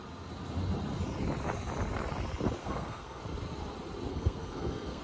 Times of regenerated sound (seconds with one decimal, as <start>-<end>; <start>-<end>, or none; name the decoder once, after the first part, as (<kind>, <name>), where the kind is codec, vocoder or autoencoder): 2.6-3.2 (codec, SNAC); 4.1-5.0

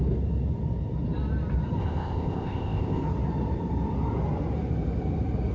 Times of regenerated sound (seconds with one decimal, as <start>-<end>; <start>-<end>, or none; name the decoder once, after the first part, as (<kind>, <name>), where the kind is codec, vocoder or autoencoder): 1.8-3.0 (codec, ZipCodec)

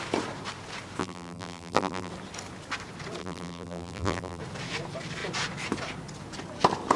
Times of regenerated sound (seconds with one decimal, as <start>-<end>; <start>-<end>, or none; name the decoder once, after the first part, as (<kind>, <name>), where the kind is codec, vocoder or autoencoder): 1.0-2.1 (vocoder, BigVGAN v2); 3.2-4.4

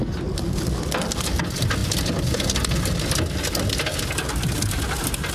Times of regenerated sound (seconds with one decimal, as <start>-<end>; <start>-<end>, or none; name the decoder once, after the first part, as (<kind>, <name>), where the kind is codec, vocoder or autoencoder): none